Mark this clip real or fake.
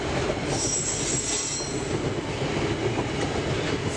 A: real